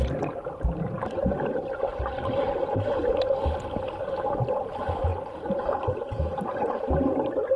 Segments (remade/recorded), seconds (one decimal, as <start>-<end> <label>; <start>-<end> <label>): 0.0-7.6 recorded